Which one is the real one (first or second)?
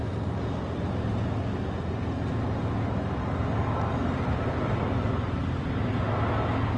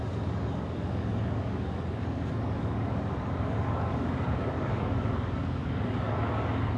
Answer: first